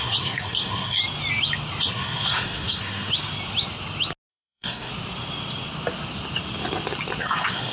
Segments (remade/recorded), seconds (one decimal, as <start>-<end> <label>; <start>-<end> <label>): 0.0-1.0 remade; 1.0-1.8 recorded; 1.8-3.1 remade; 3.1-4.3 recorded; 4.3-4.9 remade; 4.9-7.2 recorded; 7.2-7.7 remade